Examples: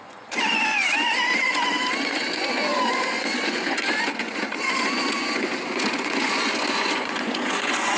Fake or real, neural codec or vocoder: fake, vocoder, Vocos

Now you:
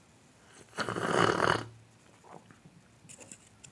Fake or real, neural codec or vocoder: real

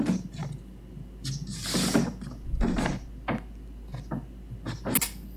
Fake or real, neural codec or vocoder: real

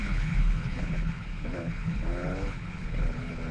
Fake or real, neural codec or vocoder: fake, codec, HILCodec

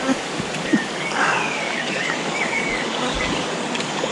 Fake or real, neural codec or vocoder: fake, codec, DAC